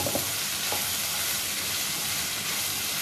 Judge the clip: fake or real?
real